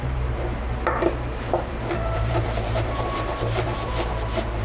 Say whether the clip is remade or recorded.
remade